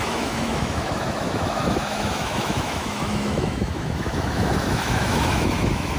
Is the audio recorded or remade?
remade